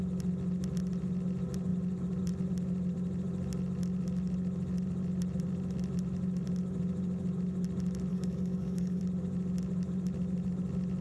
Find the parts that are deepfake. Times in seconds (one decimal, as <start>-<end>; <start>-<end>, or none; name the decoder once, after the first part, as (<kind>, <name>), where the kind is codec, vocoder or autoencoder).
8.1-9.0 (codec, DAC)